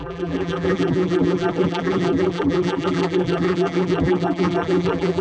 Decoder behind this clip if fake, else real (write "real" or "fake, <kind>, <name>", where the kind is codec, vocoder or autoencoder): fake, vocoder, BigVGAN v2